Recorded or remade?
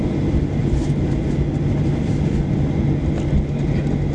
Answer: recorded